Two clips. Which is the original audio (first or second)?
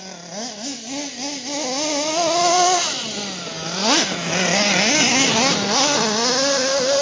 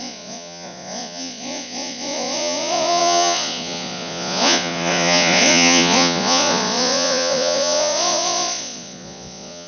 first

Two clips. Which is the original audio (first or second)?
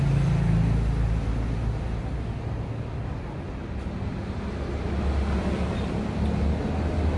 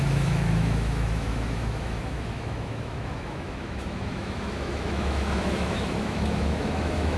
first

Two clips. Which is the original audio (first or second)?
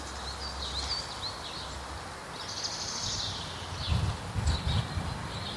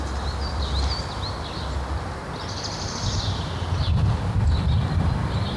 first